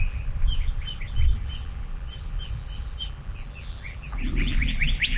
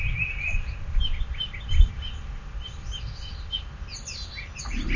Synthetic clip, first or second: first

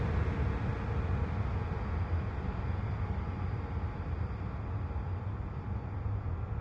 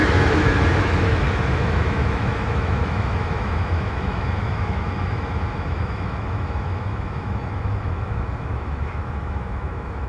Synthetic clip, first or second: second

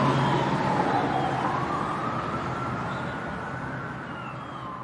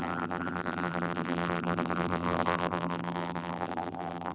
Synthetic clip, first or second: second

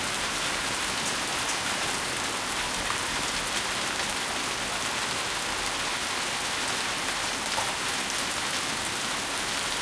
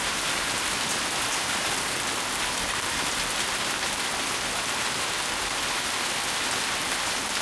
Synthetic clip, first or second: second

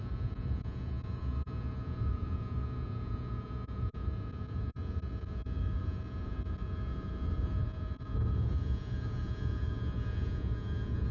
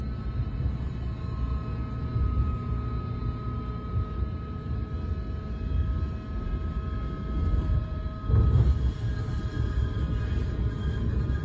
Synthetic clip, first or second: first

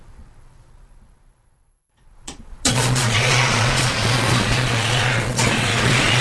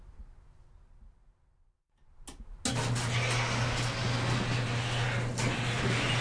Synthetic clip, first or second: first